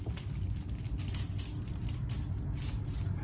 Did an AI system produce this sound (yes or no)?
no